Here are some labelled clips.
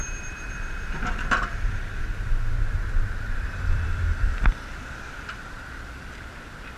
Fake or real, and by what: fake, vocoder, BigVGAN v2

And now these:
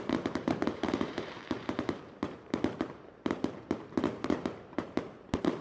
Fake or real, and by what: fake, vocoder, BigVGAN v2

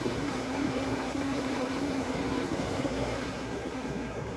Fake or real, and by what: fake, codec, SNAC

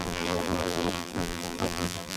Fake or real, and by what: fake, vocoder, BigVGAN v2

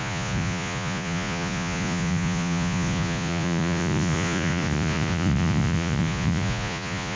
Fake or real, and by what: fake, vocoder, Vocos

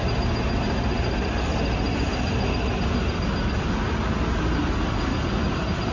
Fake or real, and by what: real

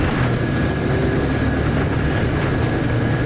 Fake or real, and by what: real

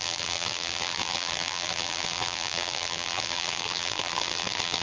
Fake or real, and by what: fake, vocoder, BigVGAN v2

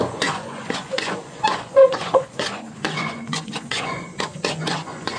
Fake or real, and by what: fake, vocoder, Vocos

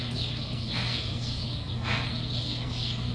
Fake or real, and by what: fake, codec, SNAC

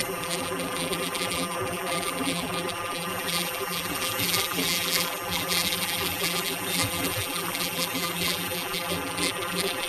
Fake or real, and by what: fake, vocoder, BigVGAN v2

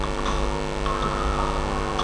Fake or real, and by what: fake, vocoder, BigVGAN v2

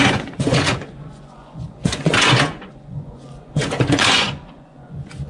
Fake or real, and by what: fake, vocoder, Vocos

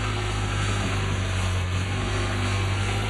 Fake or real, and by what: fake, codec, SNAC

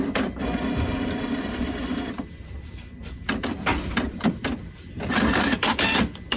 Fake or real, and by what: fake, vocoder, BigVGAN v2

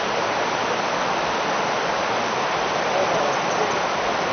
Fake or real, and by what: real